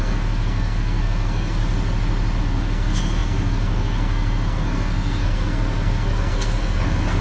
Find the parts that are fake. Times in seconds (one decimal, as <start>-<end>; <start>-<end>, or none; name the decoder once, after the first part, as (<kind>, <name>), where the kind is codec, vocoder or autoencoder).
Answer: 0.0-1.6 (codec, SNAC); 2.4-7.2